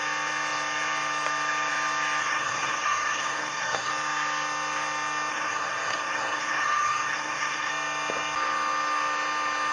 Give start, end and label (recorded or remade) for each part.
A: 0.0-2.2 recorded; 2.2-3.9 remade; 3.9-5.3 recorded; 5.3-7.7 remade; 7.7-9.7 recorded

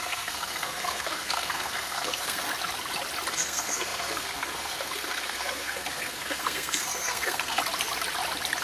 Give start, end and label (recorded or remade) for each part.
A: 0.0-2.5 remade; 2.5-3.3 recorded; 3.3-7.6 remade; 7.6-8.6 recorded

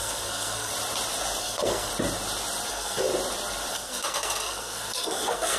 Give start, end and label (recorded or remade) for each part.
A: 0.0-0.7 remade; 0.7-1.4 recorded; 1.4-1.9 remade; 1.9-2.7 recorded; 2.7-3.1 remade; 3.1-3.7 recorded; 3.7-5.6 remade

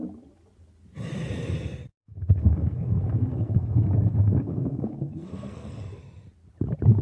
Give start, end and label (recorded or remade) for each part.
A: 0.0-1.9 recorded; 1.9-6.0 remade; 6.0-7.0 recorded

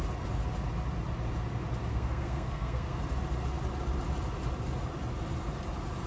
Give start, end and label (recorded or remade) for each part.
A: 0.0-1.9 recorded; 1.9-3.0 remade; 3.0-6.1 recorded

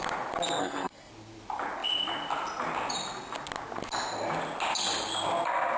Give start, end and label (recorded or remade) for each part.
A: 0.0-0.6 recorded; 0.6-1.1 remade; 1.1-5.8 recorded

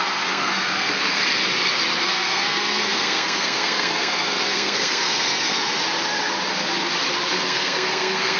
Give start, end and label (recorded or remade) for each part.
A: 0.0-1.2 remade; 1.2-2.0 recorded; 2.0-5.7 remade; 5.7-7.3 recorded; 7.3-8.4 remade